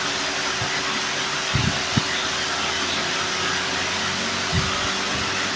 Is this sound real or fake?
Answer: real